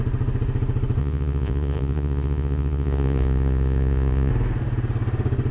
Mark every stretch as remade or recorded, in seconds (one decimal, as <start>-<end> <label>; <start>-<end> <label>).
0.0-1.0 recorded; 1.0-4.3 remade; 4.3-5.5 recorded